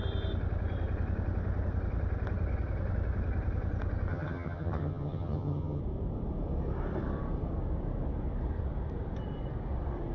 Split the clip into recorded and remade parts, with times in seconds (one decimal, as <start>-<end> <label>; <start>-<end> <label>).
0.0-4.1 recorded; 4.1-5.8 remade; 5.8-10.1 recorded